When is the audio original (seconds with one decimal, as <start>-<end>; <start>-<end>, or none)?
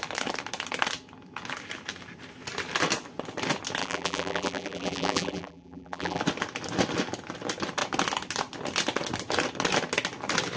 0.0-3.8; 6.2-10.6